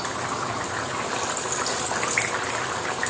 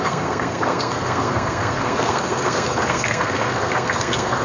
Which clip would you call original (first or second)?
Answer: first